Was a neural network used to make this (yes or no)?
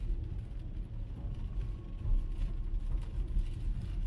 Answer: no